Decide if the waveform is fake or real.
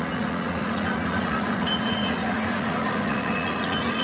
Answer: fake